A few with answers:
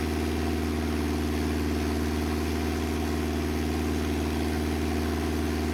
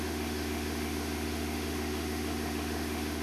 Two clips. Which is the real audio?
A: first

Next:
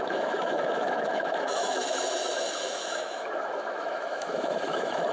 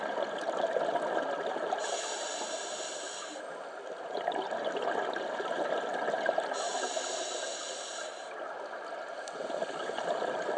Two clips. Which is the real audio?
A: second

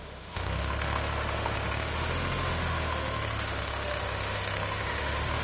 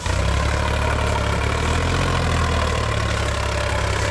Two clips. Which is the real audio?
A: second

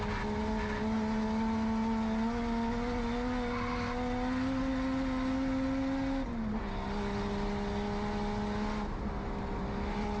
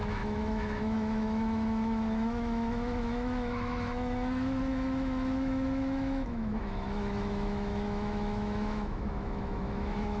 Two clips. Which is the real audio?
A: first